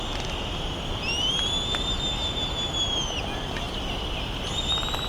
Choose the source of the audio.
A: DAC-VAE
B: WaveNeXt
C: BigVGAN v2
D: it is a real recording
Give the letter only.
D